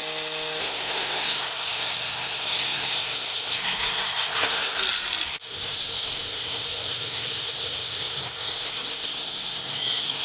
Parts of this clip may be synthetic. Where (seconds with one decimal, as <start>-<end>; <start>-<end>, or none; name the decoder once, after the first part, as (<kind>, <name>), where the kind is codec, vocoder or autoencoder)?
0.6-4.8 (codec, SNAC); 5.3-10.2